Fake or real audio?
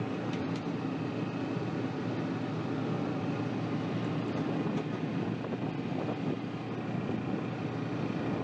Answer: real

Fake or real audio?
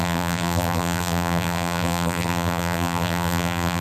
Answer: fake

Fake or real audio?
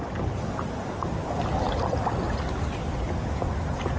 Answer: real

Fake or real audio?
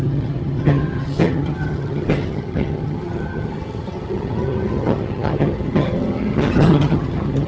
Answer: fake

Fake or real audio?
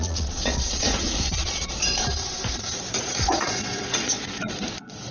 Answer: fake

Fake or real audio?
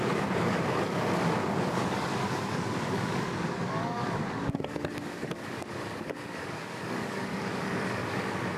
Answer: fake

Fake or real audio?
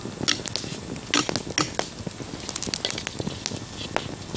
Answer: real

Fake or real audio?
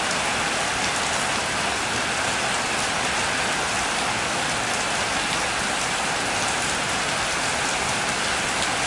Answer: real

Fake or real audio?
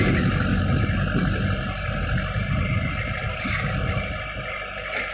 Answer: real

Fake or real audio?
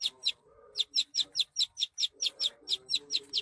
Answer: fake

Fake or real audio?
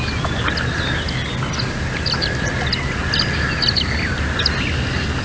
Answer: real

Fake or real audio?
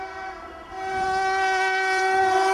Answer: fake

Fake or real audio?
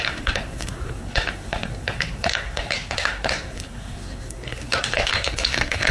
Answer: fake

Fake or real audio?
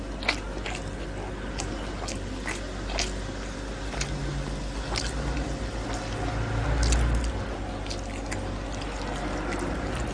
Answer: real